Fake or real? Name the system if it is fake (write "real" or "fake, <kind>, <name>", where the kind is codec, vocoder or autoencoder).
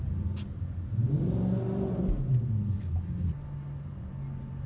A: real